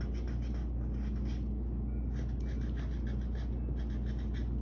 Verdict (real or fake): real